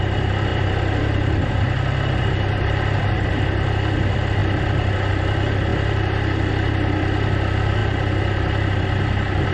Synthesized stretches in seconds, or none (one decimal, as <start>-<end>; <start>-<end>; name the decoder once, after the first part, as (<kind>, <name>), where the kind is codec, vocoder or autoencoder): none